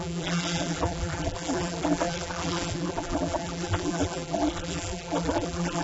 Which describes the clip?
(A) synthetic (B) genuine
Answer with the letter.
A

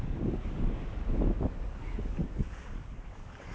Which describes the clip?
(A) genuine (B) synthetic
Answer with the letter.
B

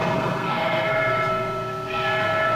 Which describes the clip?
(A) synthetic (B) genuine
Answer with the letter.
A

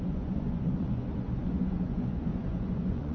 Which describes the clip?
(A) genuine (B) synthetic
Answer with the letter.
B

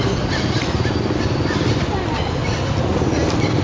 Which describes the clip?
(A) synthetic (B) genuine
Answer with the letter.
B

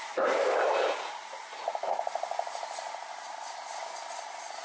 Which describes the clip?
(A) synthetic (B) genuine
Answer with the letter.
B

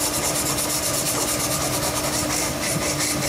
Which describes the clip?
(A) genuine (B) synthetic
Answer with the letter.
A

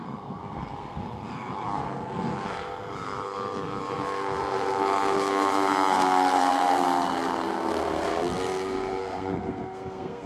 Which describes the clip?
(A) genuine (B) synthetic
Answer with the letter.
B